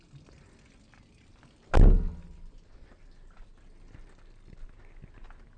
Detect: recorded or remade recorded